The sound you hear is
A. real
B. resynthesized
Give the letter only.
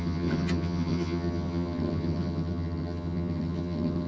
B